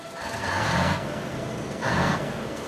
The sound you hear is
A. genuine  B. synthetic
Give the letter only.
B